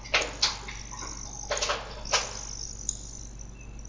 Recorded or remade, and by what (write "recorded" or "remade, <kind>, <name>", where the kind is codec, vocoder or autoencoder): recorded